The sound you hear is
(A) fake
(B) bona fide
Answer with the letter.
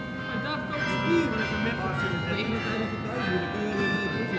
B